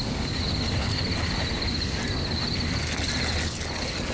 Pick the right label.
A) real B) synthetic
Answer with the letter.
A